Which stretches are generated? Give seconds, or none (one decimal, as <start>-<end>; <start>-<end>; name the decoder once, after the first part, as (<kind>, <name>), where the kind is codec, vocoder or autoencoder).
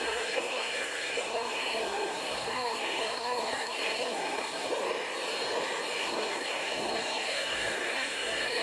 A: 0.0-4.7 (codec, SNAC); 6.0-8.6